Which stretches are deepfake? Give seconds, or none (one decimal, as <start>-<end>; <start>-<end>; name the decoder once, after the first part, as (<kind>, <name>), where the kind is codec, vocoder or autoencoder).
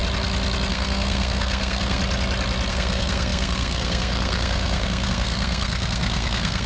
0.7-2.0 (codec, SNAC); 2.7-6.7